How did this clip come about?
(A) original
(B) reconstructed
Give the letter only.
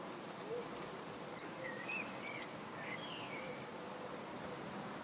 A